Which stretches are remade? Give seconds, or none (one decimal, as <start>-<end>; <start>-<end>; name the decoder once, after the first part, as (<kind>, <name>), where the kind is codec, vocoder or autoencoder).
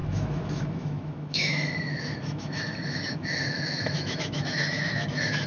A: 0.0-5.5 (autoencoder, DAC-VAE)